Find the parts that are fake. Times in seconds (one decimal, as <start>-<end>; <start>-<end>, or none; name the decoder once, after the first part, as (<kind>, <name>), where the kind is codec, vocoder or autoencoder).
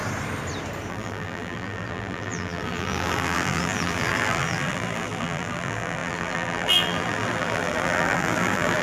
0.9-8.8 (vocoder, BigVGAN v2)